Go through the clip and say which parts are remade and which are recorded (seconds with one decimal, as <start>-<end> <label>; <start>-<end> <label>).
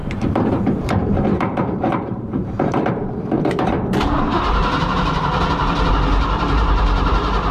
0.0-5.2 remade; 5.2-5.9 recorded; 5.9-7.5 remade